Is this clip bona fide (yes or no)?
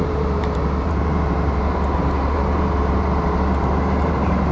no